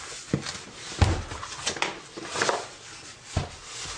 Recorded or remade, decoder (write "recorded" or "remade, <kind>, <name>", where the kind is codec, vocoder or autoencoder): recorded